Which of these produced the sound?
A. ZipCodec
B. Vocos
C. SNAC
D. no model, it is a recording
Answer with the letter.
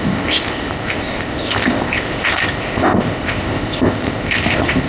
A